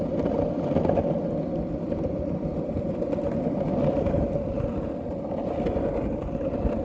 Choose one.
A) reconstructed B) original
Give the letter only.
B